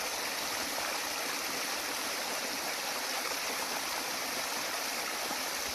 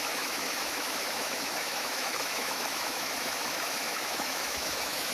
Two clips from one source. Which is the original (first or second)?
first